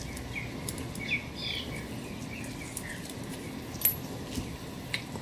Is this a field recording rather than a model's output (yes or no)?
yes